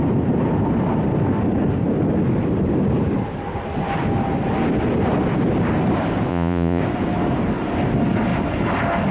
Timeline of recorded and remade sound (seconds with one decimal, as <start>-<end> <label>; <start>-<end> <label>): 0.0-6.3 recorded; 6.3-6.8 remade; 6.8-9.1 recorded